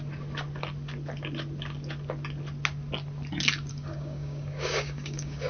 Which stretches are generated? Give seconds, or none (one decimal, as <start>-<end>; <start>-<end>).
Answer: 3.7-5.5